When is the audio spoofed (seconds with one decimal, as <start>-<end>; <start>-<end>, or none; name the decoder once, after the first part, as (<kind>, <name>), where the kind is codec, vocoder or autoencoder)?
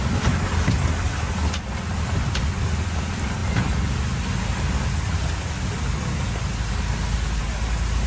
none